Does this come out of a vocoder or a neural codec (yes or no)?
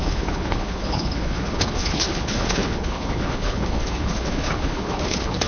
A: yes